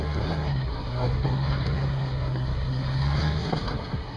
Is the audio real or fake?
fake